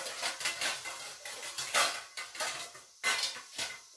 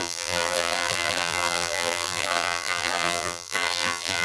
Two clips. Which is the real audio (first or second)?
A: first